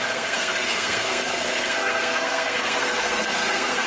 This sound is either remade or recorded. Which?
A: remade